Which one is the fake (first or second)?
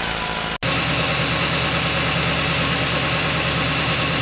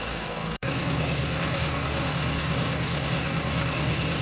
second